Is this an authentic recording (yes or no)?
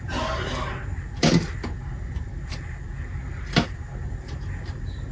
yes